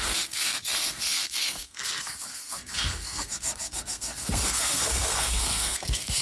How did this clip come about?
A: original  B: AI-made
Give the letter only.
B